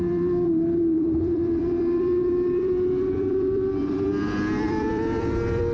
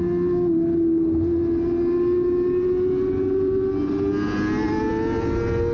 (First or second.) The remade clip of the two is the first